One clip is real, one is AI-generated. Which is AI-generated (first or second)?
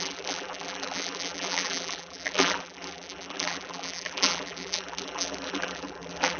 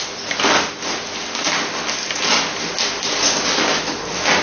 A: first